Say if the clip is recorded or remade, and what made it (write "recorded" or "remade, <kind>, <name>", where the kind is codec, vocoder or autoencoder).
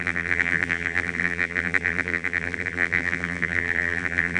remade, vocoder, BigVGAN v2